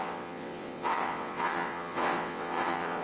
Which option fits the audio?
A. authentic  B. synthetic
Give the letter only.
B